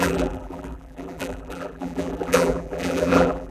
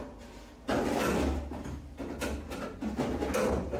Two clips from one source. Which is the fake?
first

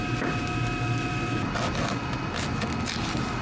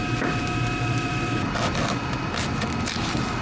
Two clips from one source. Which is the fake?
second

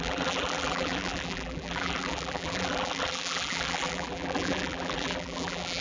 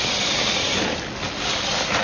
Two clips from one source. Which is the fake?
first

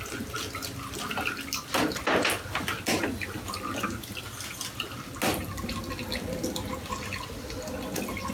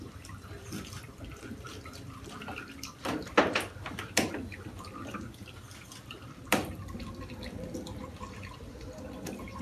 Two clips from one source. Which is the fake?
second